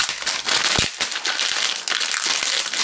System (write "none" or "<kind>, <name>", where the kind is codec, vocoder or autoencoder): none